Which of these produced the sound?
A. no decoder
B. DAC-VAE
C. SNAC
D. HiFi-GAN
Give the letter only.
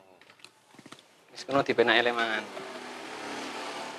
A